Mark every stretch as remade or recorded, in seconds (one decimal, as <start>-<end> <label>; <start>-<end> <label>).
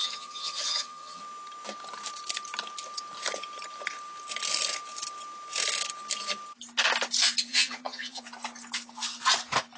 0.0-1.2 remade; 1.2-7.5 recorded; 7.5-8.2 remade; 8.2-9.8 recorded